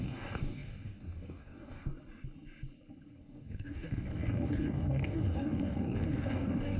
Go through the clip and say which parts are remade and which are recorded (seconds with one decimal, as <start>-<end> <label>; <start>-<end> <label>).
0.0-1.9 remade; 1.9-3.2 recorded; 3.2-6.8 remade